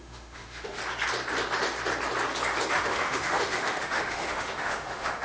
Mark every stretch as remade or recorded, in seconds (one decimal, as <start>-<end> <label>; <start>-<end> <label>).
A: 0.0-0.8 remade; 0.8-2.7 recorded; 2.7-5.2 remade